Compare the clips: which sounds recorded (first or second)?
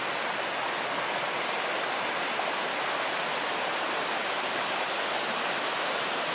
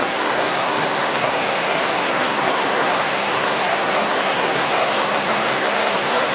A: first